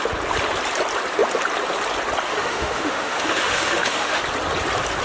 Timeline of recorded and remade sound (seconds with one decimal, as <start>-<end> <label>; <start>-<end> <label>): 0.0-2.3 recorded; 2.3-4.2 remade; 4.2-5.0 recorded